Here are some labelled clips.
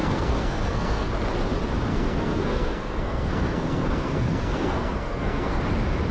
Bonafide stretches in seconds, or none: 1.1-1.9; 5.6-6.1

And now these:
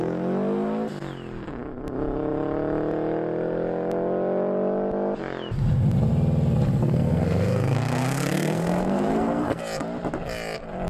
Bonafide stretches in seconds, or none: 0.0-6.8; 9.6-10.9

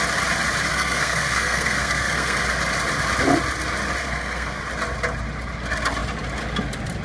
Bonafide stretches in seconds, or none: 0.0-0.7; 2.4-4.0; 4.6-7.0